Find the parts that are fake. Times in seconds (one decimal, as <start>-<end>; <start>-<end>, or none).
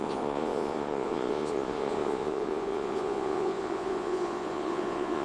0.0-5.2